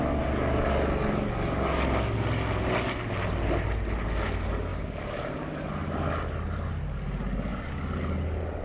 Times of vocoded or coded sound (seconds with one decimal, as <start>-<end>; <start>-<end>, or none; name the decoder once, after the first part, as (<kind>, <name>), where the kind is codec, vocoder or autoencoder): none